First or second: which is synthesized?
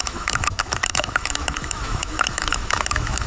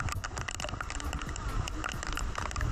first